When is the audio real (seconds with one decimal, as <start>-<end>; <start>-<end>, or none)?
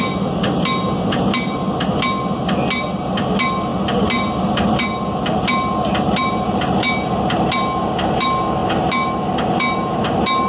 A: 0.0-10.5